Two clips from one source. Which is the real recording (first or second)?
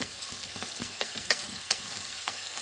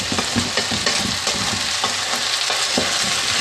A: second